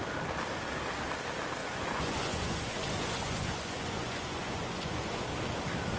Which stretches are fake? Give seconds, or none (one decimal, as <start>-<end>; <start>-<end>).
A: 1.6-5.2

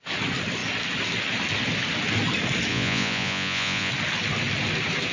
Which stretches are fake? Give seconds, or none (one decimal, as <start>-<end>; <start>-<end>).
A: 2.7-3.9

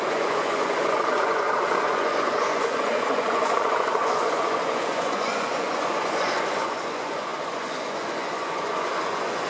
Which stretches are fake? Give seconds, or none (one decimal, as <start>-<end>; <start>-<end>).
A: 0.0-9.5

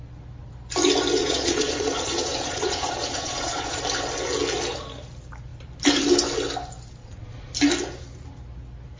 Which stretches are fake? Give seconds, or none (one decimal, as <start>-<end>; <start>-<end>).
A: 1.2-3.8; 7.0-7.5

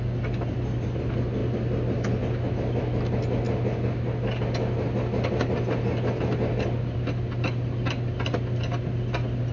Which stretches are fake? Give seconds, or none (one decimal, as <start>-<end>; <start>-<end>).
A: none

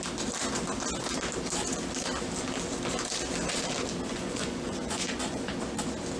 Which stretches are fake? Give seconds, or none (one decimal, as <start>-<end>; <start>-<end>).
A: 4.1-5.5

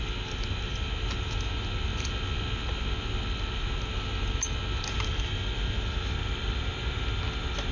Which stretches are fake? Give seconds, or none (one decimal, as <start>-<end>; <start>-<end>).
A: none

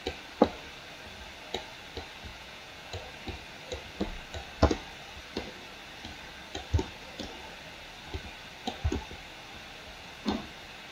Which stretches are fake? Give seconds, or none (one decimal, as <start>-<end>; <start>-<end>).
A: 2.3-3.1